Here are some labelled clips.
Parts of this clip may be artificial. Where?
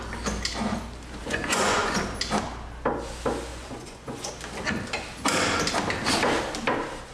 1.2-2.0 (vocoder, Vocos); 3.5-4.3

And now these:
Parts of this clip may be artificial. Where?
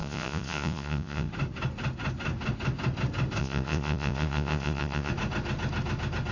0.0-1.3 (vocoder, Vocos); 3.4-5.1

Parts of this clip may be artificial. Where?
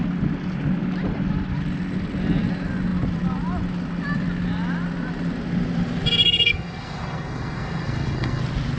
6.2-8.4 (codec, SNAC)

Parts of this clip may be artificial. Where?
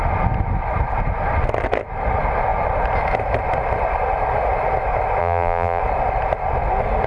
5.2-5.8 (vocoder, BigVGAN v2)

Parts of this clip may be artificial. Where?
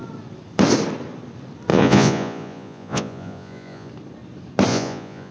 1.7-3.9 (vocoder, Vocos); 4.7-5.3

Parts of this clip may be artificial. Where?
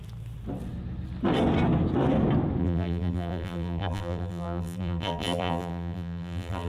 2.6-6.7 (vocoder, BigVGAN v2)